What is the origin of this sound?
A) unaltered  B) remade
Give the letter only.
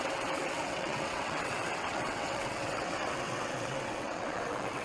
B